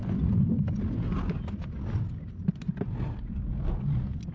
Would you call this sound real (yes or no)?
yes